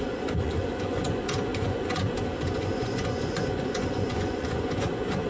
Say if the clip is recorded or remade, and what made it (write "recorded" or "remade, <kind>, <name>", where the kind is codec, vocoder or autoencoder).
remade, vocoder, Vocos